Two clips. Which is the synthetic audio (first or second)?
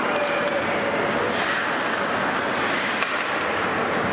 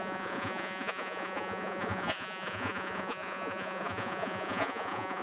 second